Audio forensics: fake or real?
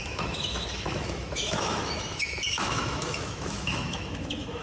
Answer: fake